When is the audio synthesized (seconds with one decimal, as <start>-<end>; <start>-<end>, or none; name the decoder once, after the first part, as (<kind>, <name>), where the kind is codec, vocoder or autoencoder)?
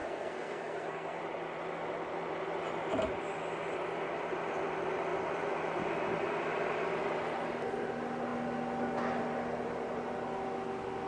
0.0-1.2 (codec, SNAC)